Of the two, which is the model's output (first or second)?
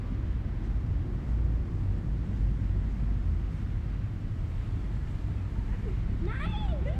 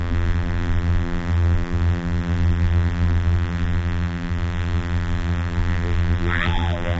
second